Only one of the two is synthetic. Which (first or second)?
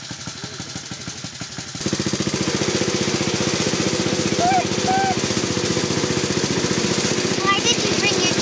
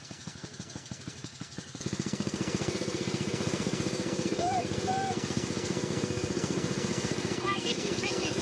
second